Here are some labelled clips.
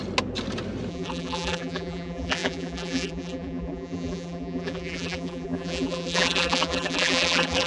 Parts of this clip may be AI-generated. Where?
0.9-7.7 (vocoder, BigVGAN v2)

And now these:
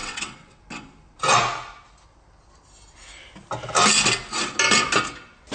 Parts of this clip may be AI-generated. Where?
0.0-0.6 (vocoder, WaveNeXt)

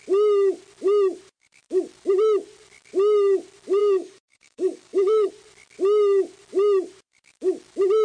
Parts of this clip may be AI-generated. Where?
3.8-5.3 (codec, DAC)

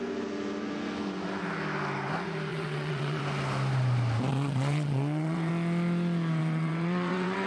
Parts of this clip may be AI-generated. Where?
2.5-3.2 (vocoder, WaveNeXt); 4.3-5.5; 6.4-7.5

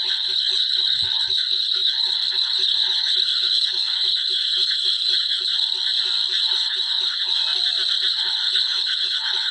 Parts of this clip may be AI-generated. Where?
0.0-5.5 (codec, HILCodec); 6.4-7.4; 8.1-9.5

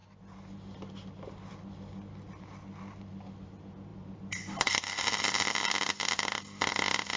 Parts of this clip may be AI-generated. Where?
3.9-5.0 (vocoder, BigVGAN v2)